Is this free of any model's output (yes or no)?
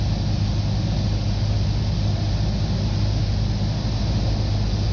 yes